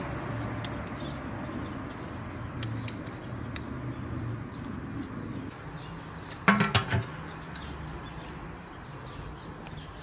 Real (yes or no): yes